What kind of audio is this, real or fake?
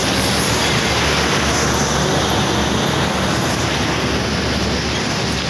real